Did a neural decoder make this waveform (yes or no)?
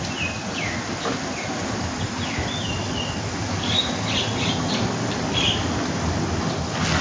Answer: no